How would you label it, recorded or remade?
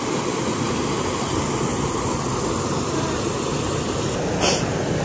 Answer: recorded